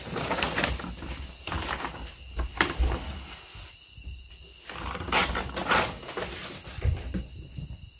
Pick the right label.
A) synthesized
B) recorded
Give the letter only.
B